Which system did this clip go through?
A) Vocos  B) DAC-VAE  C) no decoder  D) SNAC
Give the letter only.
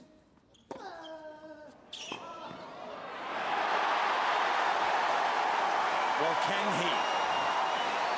C